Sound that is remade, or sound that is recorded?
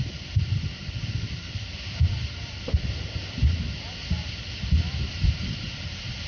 remade